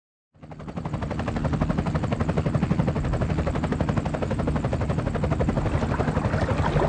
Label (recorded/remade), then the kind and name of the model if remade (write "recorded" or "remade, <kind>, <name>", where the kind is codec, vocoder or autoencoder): recorded